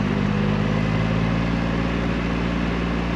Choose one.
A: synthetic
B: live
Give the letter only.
B